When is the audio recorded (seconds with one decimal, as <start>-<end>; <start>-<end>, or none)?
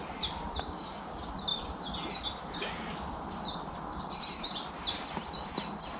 0.0-6.0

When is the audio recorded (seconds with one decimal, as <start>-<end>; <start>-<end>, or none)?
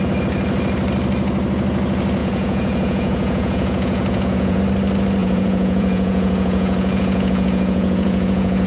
0.0-2.2; 4.6-5.2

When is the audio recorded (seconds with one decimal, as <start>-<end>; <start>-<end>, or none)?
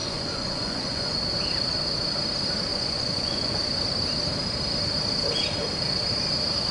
1.2-2.7; 3.6-6.7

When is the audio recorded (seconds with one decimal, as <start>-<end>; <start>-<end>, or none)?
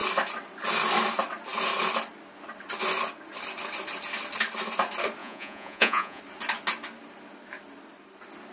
0.0-5.2; 6.2-8.5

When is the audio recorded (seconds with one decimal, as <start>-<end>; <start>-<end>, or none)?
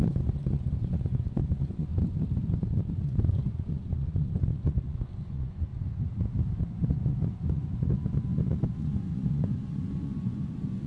1.9-2.9; 5.7-6.6